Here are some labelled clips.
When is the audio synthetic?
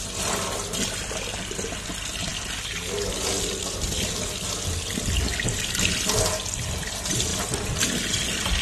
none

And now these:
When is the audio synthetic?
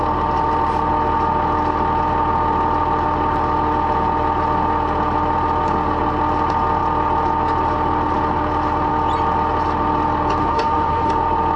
10.4-11.1 (autoencoder, DAC-VAE)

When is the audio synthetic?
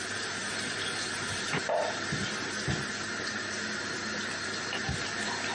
none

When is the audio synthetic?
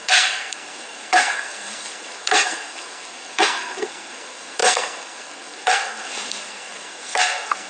0.0-7.7 (codec, SNAC)